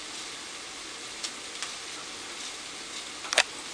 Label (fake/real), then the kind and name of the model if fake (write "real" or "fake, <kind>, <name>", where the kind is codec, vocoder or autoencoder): real